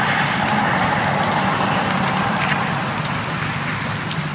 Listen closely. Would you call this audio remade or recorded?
recorded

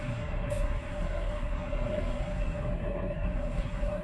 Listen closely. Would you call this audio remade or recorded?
remade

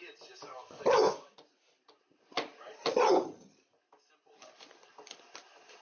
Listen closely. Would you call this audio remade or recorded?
recorded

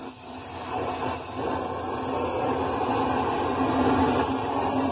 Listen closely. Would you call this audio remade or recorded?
recorded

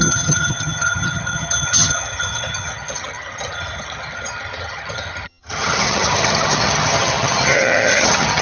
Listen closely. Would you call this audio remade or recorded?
remade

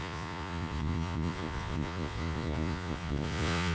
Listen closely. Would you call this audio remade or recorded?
remade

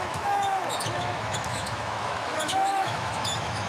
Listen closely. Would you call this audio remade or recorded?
remade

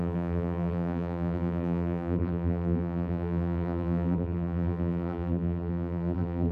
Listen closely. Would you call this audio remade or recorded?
remade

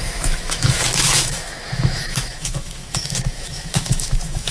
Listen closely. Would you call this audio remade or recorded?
remade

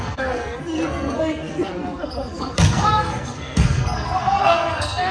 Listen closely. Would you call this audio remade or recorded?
remade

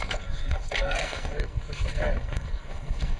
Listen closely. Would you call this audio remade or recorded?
remade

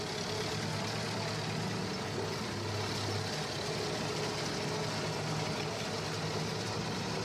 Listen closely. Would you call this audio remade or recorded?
recorded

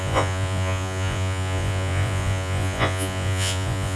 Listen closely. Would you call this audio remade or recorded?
remade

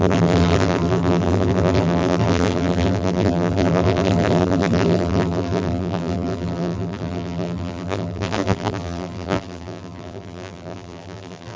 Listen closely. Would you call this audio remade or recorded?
remade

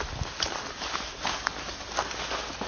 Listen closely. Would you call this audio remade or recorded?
recorded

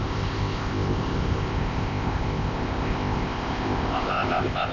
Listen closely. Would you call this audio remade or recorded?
remade